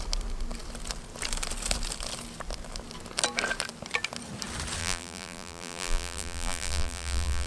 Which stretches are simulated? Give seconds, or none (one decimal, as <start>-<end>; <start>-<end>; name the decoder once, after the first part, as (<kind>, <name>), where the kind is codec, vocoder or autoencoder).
4.8-7.5 (vocoder, BigVGAN v2)